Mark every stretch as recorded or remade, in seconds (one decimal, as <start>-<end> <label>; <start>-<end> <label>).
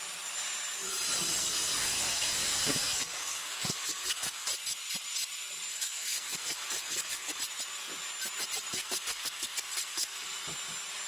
0.0-1.4 recorded; 1.4-4.5 remade; 4.5-5.7 recorded; 5.7-7.4 remade; 7.4-8.7 recorded; 8.7-10.3 remade; 10.3-11.1 recorded